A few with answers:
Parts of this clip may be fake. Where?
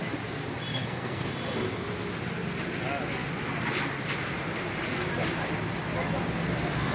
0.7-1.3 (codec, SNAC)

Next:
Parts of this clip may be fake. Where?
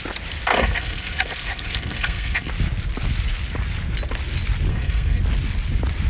0.5-2.5 (codec, SNAC); 4.7-5.2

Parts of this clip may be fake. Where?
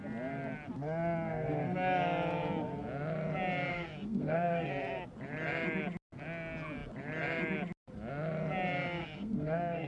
3.7-4.7 (codec, SNAC); 9.0-9.9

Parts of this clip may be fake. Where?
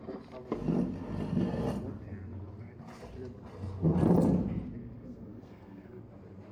4.8-6.0 (codec, SNAC)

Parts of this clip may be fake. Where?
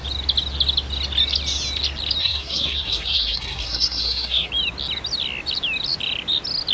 2.2-4.5 (codec, SNAC)